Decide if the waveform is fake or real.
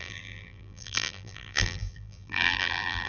fake